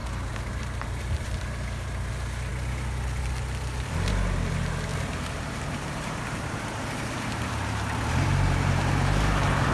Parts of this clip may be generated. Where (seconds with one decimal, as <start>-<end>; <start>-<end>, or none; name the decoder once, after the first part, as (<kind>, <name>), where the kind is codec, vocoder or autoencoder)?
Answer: 0.0-2.1 (vocoder, BigVGAN v2); 4.9-9.7

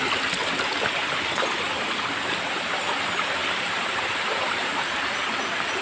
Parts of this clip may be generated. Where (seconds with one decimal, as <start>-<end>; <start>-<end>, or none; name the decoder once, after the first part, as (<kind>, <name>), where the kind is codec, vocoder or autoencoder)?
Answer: 3.4-5.0 (vocoder, BigVGAN v2)

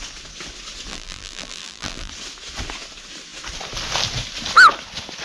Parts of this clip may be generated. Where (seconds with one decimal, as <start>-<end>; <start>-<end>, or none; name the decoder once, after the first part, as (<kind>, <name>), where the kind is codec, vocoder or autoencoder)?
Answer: 0.9-2.1 (vocoder, BigVGAN v2)

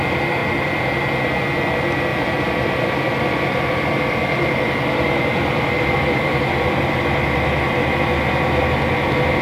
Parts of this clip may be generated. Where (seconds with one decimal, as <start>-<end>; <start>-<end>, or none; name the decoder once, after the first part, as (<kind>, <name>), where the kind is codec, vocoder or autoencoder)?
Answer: 0.4-1.2 (vocoder, BigVGAN v2); 2.1-7.0

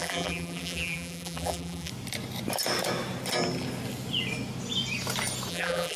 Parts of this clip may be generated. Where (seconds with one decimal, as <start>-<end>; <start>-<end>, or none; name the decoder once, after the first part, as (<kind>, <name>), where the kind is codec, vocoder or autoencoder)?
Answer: 0.0-1.9 (vocoder, BigVGAN v2); 5.5-6.0

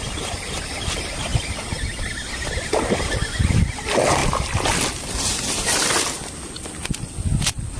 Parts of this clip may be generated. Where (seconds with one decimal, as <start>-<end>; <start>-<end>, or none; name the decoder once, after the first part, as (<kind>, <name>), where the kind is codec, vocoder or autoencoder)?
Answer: none

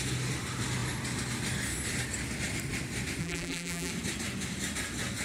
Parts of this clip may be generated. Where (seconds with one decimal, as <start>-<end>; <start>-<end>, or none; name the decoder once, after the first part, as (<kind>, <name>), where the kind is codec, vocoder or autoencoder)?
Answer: 3.2-3.9 (vocoder, BigVGAN v2)